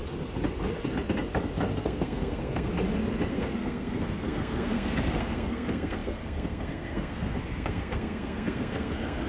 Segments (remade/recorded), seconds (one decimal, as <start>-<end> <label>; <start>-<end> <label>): 0.0-1.8 recorded; 1.8-2.7 remade; 2.7-3.3 recorded; 3.3-9.3 remade